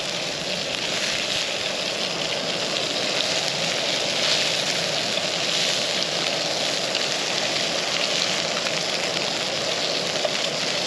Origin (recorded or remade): recorded